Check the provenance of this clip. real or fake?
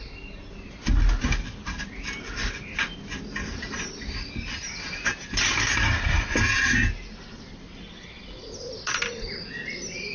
real